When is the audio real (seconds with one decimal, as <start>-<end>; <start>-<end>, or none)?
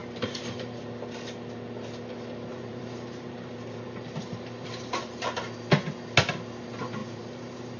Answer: 0.8-2.5; 5.4-7.0